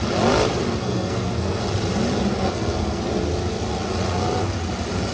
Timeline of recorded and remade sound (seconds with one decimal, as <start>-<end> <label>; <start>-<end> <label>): 0.0-0.8 recorded; 0.8-1.6 remade; 1.6-2.3 recorded; 2.3-3.0 remade; 3.0-5.1 recorded